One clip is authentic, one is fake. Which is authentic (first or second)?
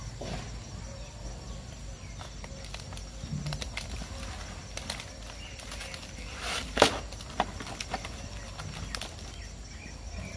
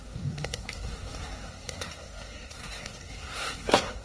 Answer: first